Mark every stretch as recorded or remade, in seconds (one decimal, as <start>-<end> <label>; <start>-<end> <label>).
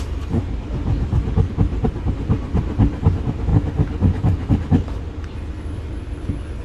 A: 0.0-6.6 recorded